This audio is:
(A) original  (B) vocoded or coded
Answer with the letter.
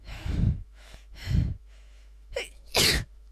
B